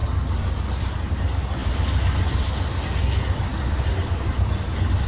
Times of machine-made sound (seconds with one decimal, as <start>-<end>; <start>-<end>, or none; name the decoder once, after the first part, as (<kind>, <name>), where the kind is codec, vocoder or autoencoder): none